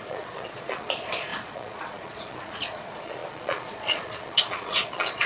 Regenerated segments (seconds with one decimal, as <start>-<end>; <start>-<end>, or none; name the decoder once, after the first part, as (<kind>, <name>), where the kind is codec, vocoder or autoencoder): 0.0-5.3 (vocoder, Vocos)